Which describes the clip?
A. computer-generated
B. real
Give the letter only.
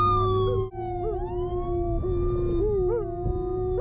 B